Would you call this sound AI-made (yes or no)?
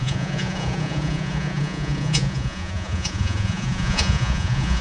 yes